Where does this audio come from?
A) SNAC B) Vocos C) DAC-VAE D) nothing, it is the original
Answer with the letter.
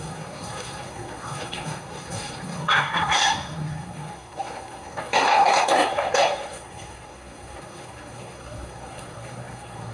A